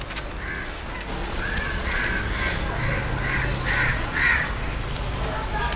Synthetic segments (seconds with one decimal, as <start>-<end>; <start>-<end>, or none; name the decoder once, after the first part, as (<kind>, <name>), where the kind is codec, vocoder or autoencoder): 1.2-2.0 (vocoder, Vocos); 3.9-4.5